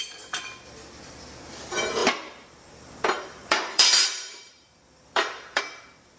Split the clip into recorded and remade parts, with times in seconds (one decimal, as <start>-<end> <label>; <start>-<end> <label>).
0.0-2.0 recorded; 2.0-5.6 remade; 5.6-6.2 recorded